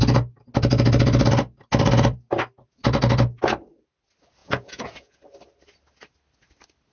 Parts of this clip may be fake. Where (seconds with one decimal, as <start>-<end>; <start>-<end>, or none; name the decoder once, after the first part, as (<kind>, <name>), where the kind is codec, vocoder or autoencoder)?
4.4-5.2 (vocoder, Vocos)